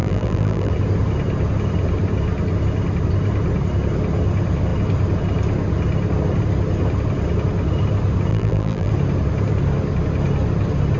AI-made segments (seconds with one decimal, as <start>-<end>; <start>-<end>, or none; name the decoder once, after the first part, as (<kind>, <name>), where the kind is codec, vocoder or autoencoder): 0.0-0.7 (vocoder, BigVGAN v2); 8.3-8.9